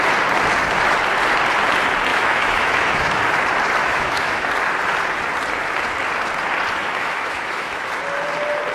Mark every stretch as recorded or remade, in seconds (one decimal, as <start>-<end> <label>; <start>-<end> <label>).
0.0-2.1 recorded; 2.1-3.2 remade; 3.2-3.8 recorded; 3.8-4.5 remade; 4.5-6.8 recorded; 6.8-7.9 remade; 7.9-8.7 recorded